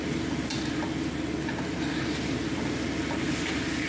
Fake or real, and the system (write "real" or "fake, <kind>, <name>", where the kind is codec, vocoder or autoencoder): real